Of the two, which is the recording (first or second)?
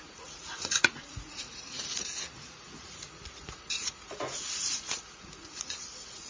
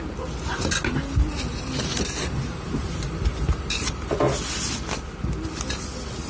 second